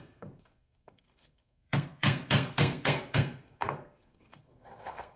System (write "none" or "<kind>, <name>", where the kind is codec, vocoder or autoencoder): codec, SNAC